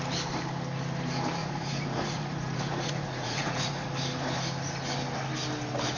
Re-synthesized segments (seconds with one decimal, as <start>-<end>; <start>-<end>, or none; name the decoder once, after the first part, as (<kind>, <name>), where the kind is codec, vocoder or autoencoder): 1.4-3.9 (vocoder, Vocos)